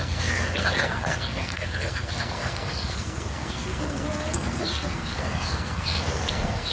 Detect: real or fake fake